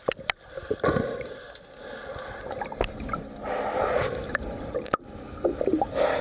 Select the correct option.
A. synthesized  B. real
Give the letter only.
B